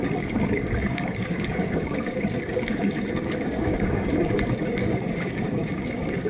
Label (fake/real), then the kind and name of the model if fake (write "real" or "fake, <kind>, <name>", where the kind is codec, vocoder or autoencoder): fake, codec, DAC